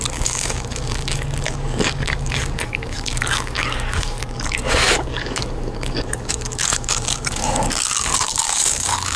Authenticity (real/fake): fake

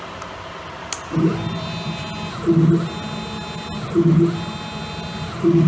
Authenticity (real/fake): real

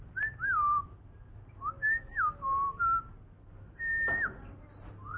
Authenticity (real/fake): real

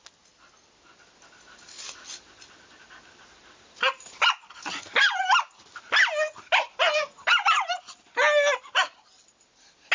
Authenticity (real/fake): real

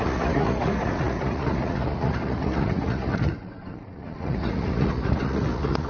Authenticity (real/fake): fake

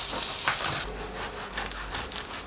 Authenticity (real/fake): real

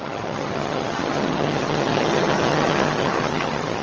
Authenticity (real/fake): fake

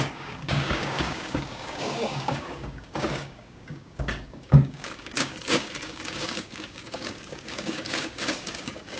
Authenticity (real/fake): fake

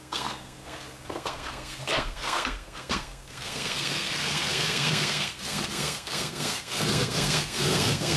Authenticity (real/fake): fake